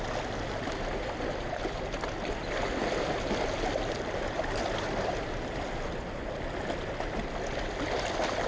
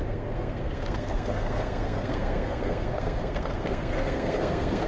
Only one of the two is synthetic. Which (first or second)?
second